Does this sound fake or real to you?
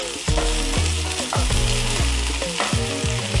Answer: real